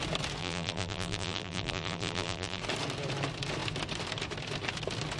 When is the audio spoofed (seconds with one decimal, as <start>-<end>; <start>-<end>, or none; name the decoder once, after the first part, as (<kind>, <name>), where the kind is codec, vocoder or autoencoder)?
0.4-2.6 (vocoder, BigVGAN v2)